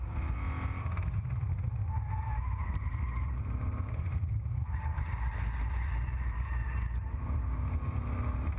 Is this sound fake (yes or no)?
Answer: no